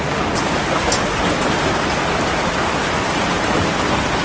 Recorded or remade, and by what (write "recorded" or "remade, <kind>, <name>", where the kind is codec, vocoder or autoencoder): recorded